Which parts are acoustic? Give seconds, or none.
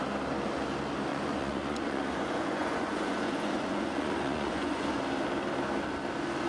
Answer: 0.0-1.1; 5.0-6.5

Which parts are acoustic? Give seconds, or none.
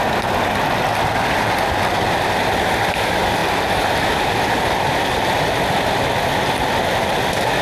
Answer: 0.0-7.6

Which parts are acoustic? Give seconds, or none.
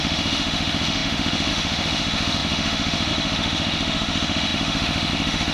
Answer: none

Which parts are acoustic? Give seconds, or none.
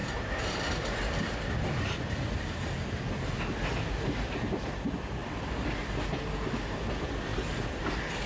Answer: 2.7-5.2; 5.9-7.3; 7.9-8.3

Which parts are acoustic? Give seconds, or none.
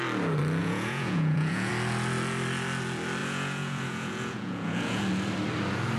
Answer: 0.0-0.6; 1.7-3.2; 5.0-6.0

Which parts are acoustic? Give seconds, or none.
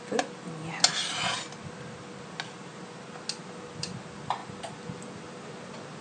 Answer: 0.0-6.0